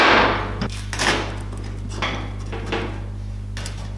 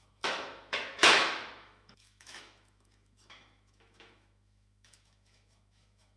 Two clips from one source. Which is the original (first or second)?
first